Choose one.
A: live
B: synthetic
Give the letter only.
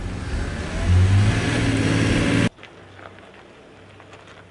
A